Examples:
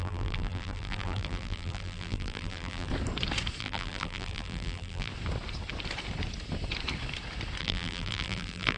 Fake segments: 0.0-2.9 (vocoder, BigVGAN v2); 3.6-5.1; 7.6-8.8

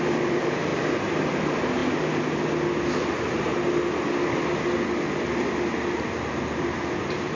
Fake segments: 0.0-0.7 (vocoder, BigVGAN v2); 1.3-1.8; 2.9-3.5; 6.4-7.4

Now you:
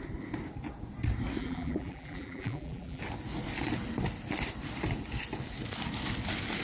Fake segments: 1.4-3.0 (vocoder, BigVGAN v2)

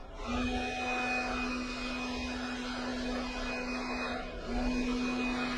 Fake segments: none